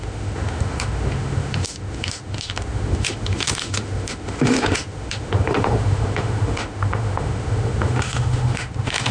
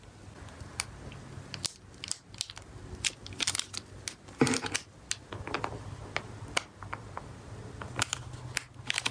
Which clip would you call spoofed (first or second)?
first